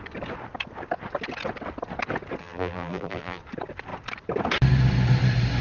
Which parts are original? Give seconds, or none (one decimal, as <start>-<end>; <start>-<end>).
0.0-2.4; 3.4-5.6